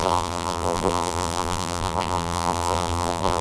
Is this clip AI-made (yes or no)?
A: yes